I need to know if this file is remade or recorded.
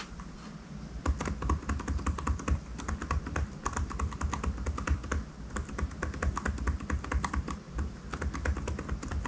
recorded